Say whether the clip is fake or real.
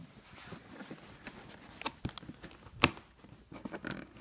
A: real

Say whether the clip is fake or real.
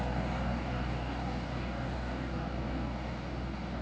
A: fake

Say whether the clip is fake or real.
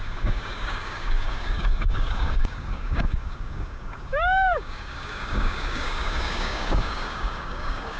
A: fake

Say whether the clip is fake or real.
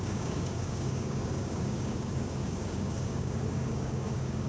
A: fake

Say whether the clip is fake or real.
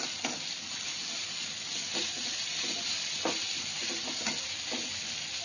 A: real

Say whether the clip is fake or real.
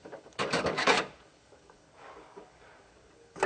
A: fake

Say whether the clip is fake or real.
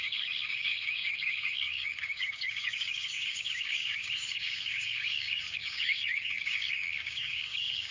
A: fake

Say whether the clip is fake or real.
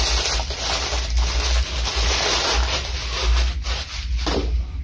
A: real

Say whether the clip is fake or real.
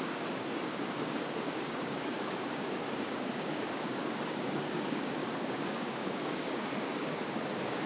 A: fake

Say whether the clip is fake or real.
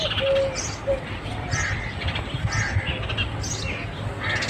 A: real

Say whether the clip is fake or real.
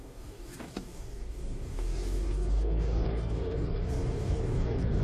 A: fake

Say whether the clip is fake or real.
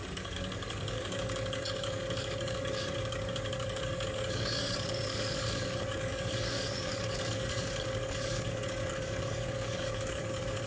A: fake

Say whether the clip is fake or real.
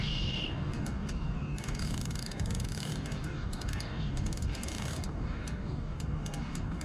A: fake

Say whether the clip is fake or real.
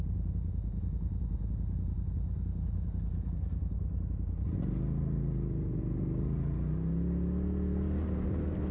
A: real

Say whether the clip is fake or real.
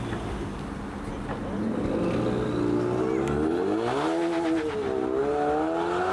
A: real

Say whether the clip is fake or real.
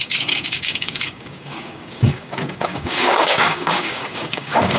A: fake